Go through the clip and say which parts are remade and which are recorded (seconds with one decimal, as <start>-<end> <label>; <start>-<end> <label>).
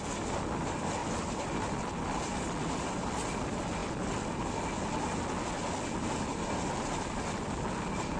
0.0-1.0 recorded; 1.0-1.6 remade; 1.6-8.2 recorded